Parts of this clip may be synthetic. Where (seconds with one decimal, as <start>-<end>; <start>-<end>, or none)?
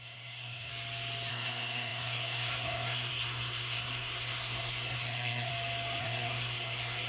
0.0-0.7; 1.3-5.5; 6.0-7.1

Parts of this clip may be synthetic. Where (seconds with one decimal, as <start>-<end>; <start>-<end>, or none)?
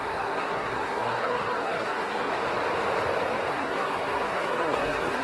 0.0-2.3; 3.5-5.2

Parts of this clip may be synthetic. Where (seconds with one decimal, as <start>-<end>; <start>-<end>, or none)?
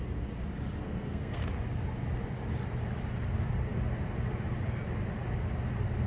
0.8-1.4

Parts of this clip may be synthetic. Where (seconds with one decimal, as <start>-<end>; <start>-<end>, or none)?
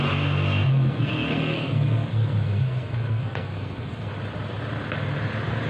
0.7-4.1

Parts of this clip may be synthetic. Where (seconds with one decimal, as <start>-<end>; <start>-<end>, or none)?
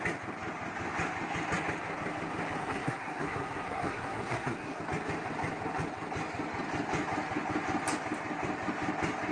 2.6-4.8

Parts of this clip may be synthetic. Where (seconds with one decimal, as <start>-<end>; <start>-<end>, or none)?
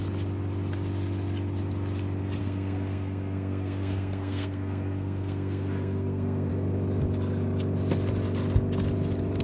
2.4-6.5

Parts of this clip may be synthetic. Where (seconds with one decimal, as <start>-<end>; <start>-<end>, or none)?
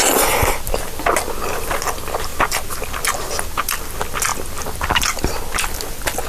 none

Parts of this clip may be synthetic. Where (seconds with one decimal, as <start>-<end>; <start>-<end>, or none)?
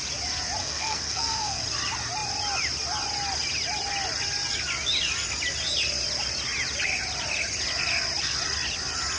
0.6-1.6